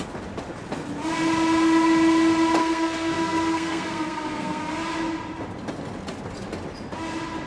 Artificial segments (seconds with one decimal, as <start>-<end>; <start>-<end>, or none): 2.6-4.6